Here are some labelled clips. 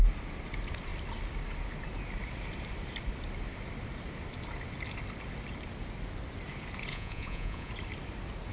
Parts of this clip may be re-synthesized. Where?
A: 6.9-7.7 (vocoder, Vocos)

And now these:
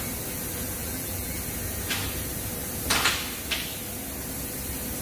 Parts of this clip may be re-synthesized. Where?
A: 0.8-1.4 (vocoder, BigVGAN v2)

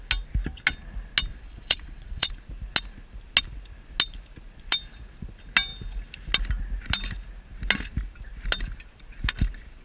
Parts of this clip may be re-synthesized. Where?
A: 1.3-2.3 (vocoder, Vocos)

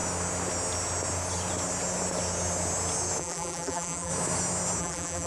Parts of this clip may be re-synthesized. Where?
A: 3.2-4.1 (vocoder, BigVGAN v2); 4.8-5.3

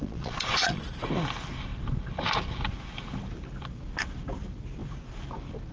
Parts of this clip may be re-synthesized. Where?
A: 0.0-0.8 (vocoder, Vocos)

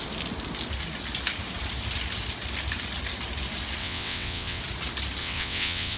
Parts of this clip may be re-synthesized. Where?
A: 3.8-4.6 (vocoder, WaveNeXt); 5.2-6.0

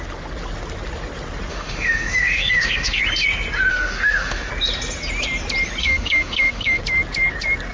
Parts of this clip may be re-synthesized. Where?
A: 1.5-3.0 (autoencoder, DAC-VAE); 3.7-4.5; 5.8-6.8